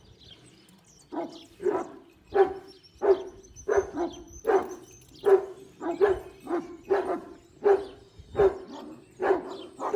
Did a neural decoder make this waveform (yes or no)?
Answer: no